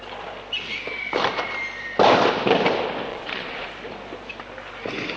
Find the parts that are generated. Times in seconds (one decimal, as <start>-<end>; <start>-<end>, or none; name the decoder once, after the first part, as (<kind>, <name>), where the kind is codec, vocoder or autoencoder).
3.1-3.7 (vocoder, Vocos)